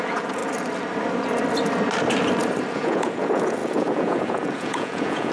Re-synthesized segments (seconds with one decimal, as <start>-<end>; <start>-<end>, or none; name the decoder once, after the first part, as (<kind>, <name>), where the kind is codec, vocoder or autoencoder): 0.0-0.4 (vocoder, Vocos); 2.7-5.3